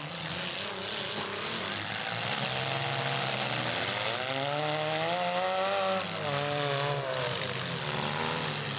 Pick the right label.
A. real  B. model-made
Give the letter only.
A